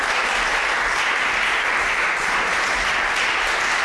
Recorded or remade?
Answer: recorded